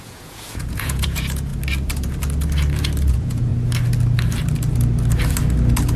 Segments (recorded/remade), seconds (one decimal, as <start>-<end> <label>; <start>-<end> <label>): 0.0-1.5 remade; 1.5-3.1 recorded; 3.1-3.5 remade; 3.5-6.0 recorded